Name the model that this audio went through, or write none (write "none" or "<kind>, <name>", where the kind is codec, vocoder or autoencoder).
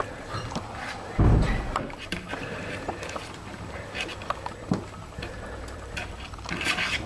vocoder, BigVGAN v2